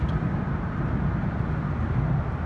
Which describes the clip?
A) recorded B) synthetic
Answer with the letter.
A